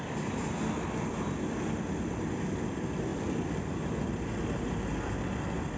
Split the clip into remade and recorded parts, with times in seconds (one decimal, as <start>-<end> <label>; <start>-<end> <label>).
0.0-5.8 recorded